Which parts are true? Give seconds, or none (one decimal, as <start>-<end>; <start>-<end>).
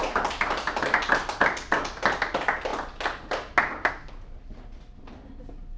0.0-5.8